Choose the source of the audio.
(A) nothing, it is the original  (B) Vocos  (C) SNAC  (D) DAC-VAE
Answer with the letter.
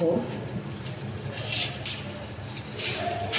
A